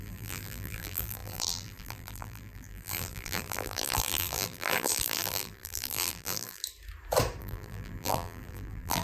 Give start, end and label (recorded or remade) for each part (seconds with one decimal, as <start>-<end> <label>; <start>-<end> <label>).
0.0-6.6 remade; 6.6-7.4 recorded; 7.4-9.0 remade